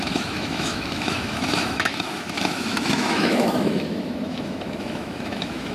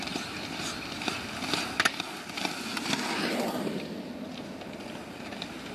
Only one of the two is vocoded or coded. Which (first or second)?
first